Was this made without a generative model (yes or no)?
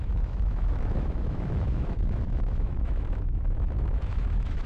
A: no